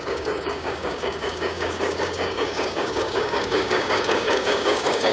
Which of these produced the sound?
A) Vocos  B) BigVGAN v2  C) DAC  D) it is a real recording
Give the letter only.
C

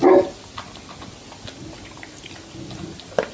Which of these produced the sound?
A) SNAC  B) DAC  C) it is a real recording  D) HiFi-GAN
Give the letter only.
C